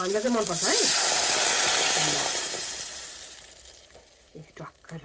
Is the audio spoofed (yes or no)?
yes